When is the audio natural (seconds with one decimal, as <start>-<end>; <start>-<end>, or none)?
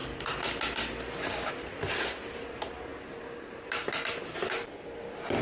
0.0-5.4